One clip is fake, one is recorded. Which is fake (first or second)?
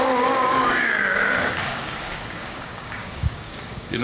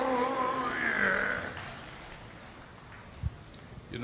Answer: first